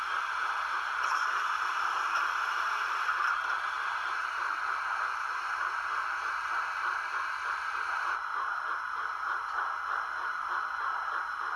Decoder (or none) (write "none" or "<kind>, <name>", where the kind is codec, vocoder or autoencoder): none